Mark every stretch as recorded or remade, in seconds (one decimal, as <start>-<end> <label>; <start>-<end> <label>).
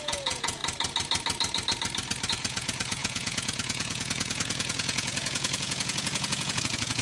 0.0-0.6 remade; 0.6-2.3 recorded; 2.3-7.0 remade